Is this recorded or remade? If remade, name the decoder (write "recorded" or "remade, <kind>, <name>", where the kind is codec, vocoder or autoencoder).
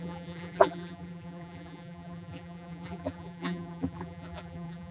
remade, vocoder, BigVGAN v2